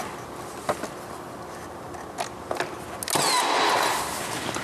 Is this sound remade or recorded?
recorded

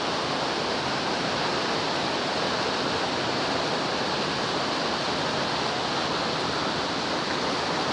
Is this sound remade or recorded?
recorded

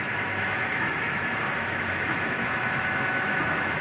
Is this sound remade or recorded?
remade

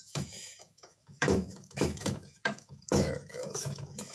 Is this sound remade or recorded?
remade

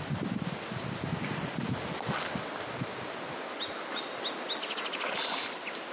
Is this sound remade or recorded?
recorded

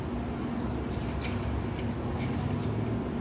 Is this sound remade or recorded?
recorded